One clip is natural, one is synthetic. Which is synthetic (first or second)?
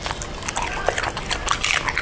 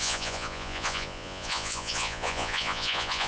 second